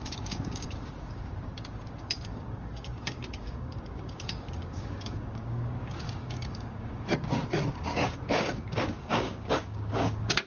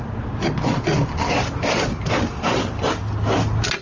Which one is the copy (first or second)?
first